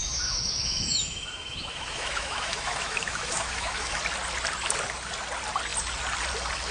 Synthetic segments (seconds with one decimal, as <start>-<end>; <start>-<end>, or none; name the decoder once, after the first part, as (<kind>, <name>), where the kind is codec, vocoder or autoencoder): 0.0-4.0 (autoencoder, DAC-VAE)